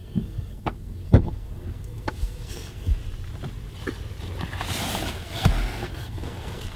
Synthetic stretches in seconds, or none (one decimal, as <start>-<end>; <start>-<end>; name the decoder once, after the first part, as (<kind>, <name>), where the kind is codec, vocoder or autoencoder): 0.0-3.0 (codec, SNAC); 5.1-6.8